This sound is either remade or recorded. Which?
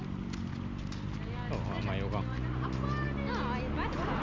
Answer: recorded